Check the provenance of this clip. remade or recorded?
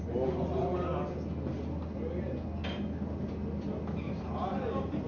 recorded